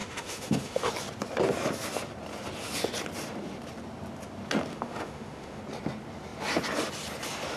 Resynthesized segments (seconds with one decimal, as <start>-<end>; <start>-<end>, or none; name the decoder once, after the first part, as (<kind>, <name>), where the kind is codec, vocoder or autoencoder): 0.0-0.9 (autoencoder, DAC-VAE); 4.7-5.6